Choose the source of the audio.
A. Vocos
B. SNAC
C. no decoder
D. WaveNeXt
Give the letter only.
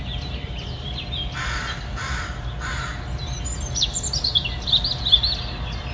C